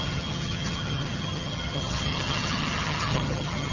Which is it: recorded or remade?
remade